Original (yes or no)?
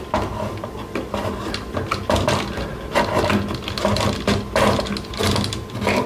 yes